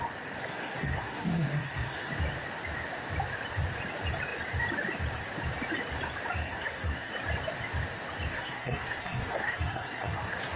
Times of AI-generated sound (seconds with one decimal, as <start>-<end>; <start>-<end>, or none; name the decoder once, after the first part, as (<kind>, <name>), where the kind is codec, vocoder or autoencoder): 0.4-2.1 (codec, SNAC); 6.4-7.1; 8.3-10.6